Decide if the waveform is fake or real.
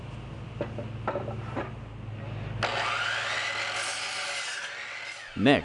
real